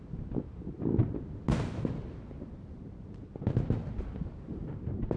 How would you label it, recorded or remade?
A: recorded